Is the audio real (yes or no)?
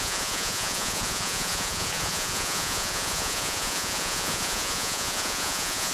no